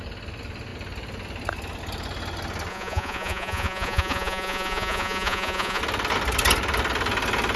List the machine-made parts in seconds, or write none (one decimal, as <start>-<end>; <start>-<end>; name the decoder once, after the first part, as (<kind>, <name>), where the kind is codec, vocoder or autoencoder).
2.7-5.8 (vocoder, Vocos)